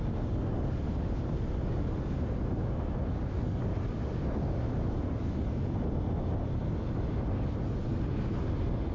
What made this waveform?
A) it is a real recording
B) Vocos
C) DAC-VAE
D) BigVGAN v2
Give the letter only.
A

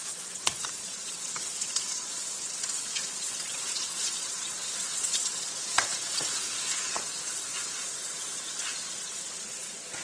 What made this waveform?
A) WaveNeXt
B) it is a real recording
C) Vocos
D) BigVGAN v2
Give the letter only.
C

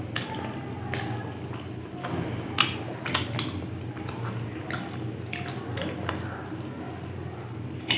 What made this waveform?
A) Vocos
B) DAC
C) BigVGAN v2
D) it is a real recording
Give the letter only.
D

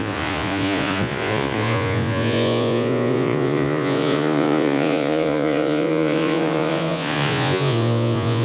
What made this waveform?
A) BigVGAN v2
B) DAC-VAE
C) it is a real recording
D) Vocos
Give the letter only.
D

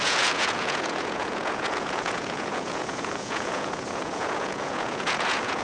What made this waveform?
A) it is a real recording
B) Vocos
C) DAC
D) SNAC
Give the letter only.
B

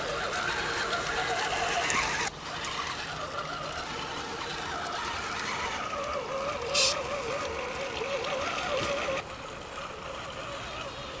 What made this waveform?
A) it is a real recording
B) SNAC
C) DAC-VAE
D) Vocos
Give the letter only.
A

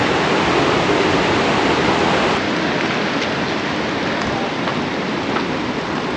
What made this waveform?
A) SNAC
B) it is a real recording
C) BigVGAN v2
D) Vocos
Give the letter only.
B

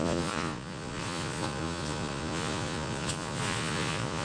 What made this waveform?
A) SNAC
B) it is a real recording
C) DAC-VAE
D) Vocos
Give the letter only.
D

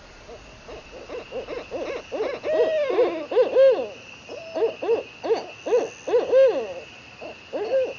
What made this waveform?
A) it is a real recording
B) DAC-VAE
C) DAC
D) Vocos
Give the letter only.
A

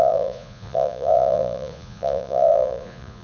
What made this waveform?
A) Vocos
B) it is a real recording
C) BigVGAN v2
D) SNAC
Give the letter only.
A